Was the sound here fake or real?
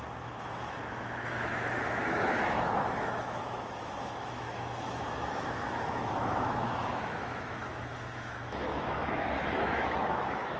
fake